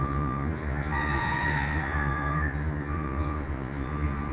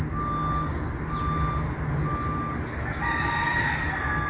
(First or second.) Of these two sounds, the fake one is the first